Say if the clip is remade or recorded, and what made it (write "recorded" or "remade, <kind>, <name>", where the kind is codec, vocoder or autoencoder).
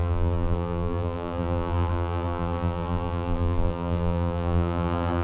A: remade, vocoder, BigVGAN v2